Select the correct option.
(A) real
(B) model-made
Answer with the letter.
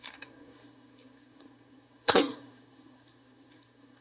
B